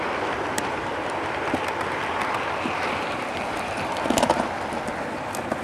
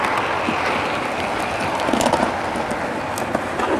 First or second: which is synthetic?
first